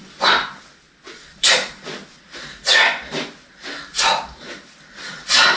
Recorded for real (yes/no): yes